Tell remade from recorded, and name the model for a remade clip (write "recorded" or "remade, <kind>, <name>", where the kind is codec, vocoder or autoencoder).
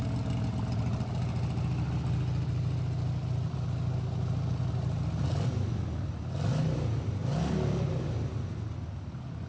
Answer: recorded